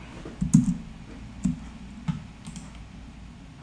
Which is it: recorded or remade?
recorded